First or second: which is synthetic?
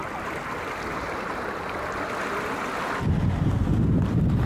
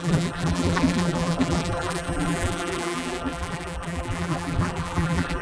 second